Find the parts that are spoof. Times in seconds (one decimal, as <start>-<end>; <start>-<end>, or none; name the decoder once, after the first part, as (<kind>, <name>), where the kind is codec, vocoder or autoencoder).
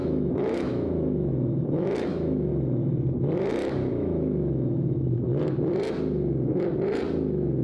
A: 0.0-2.5 (autoencoder, DAC-VAE); 3.9-5.3